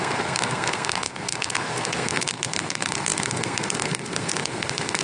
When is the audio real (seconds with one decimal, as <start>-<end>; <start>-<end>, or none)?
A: none